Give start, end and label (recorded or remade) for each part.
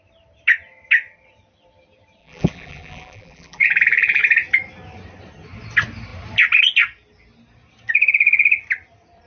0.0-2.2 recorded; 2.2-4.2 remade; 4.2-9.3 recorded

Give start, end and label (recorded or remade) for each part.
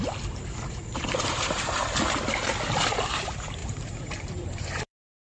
0.0-1.8 remade; 1.8-2.8 recorded; 2.8-5.2 remade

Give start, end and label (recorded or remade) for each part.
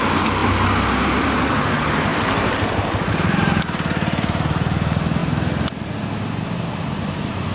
0.0-2.1 recorded; 2.1-3.6 remade; 3.6-7.5 recorded